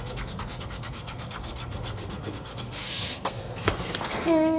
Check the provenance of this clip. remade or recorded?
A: remade